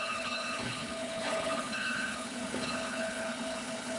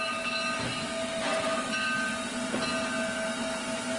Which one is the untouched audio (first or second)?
second